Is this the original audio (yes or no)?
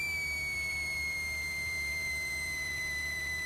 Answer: no